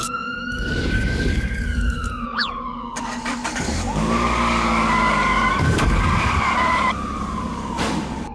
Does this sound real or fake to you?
fake